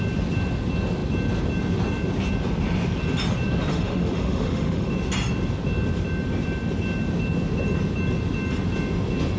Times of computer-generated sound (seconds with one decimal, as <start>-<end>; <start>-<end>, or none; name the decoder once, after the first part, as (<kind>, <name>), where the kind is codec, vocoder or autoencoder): 3.7-4.9 (autoencoder, DAC-VAE)